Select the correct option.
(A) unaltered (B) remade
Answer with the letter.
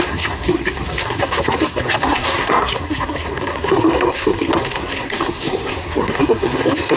B